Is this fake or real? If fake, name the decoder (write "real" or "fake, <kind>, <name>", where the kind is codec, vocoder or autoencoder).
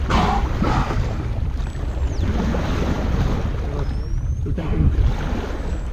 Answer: real